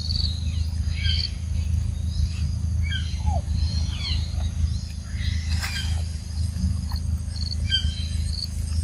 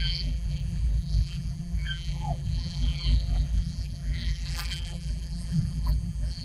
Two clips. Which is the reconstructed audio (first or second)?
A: second